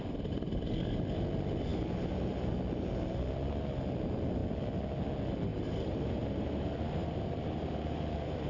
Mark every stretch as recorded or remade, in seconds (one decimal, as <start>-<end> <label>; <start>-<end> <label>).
0.0-5.5 recorded; 5.5-8.5 remade